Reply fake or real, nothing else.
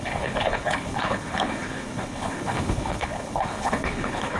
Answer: fake